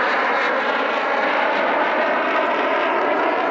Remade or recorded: recorded